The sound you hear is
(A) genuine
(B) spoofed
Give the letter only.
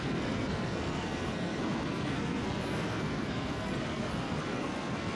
B